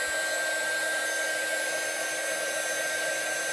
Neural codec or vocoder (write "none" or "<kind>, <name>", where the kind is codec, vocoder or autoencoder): none